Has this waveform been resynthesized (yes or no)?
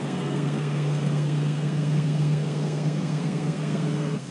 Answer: yes